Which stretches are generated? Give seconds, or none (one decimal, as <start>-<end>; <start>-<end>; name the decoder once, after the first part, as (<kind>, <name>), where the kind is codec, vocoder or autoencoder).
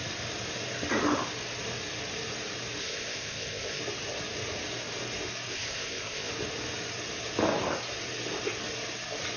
2.8-3.8 (codec, ZipCodec); 5.5-6.3